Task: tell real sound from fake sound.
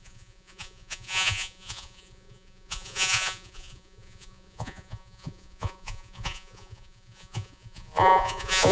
fake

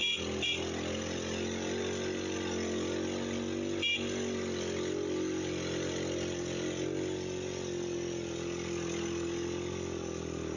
real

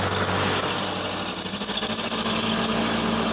real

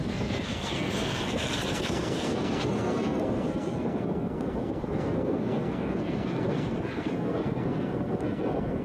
fake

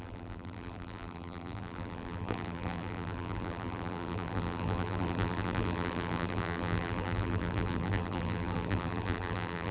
fake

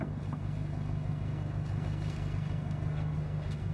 fake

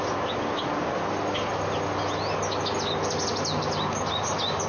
real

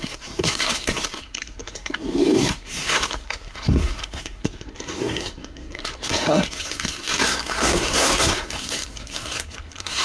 fake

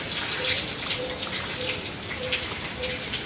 real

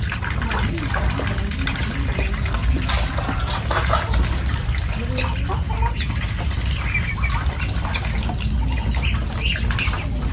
real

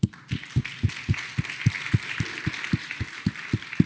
real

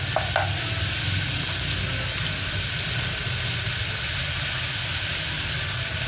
real